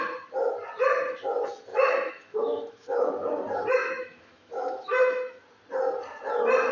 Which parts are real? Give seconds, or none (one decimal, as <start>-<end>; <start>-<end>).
0.0-1.7; 3.1-3.8; 5.4-6.7

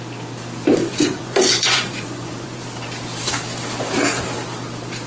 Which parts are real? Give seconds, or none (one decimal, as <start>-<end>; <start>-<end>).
0.0-0.8; 2.6-5.1

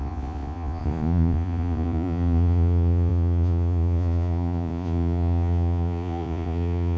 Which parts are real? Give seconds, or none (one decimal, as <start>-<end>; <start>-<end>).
none

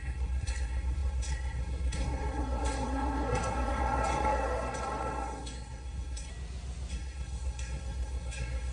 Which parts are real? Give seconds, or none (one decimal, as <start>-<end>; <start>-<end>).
6.3-6.9